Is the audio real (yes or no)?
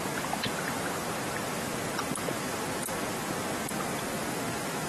yes